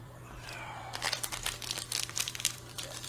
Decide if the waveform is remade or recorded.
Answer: remade